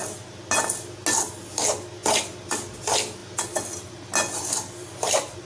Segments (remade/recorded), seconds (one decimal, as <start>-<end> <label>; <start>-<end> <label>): 0.0-5.4 recorded